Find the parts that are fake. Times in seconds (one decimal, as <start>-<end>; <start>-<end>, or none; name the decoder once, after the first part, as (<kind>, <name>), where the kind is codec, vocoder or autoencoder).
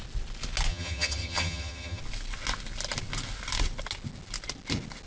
0.7-2.0 (vocoder, HiFi-GAN)